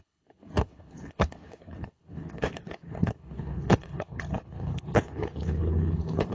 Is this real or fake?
fake